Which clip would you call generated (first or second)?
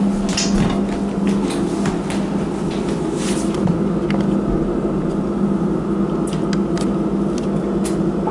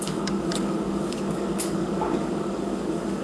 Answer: second